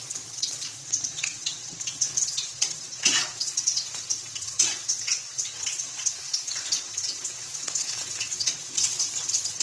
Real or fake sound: fake